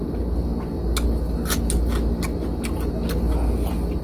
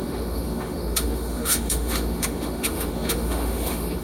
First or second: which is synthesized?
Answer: second